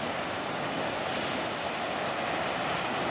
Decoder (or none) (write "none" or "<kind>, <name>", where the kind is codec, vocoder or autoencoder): none